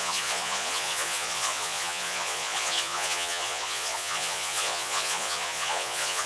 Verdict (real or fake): fake